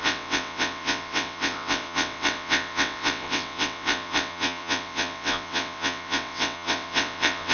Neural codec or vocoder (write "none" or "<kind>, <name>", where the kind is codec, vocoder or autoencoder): vocoder, WaveNeXt